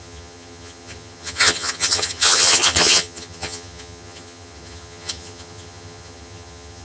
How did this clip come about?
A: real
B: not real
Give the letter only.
B